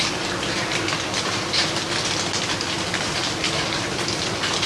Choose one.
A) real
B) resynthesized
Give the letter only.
A